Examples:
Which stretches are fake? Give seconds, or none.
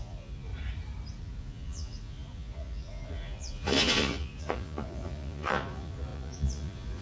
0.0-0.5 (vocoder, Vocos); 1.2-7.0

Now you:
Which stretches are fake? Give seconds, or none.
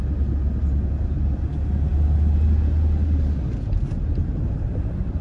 none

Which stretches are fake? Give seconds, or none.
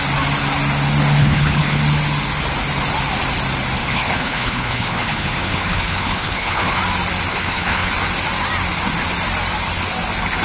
1.2-1.8 (codec, HILCodec); 3.8-6.8; 7.3-7.9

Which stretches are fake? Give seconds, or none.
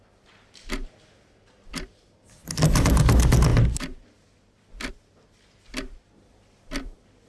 none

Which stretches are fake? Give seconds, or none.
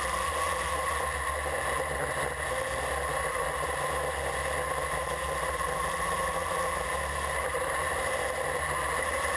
7.5-8.1 (vocoder, BigVGAN v2)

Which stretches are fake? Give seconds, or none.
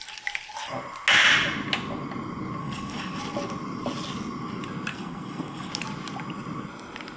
2.6-3.2 (codec, SNAC); 4.9-5.7